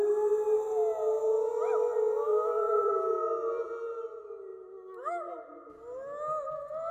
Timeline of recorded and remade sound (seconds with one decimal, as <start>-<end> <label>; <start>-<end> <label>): 0.0-2.3 recorded; 2.3-2.9 remade; 2.9-6.9 recorded

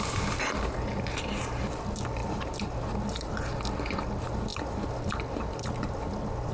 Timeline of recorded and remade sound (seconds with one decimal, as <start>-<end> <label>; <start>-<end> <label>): 0.0-6.5 recorded